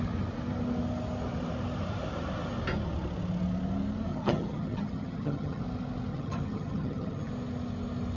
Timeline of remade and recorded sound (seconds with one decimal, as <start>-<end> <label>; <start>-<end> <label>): 0.0-4.1 recorded; 4.1-5.6 remade; 5.6-6.1 recorded; 6.1-7.3 remade; 7.3-8.2 recorded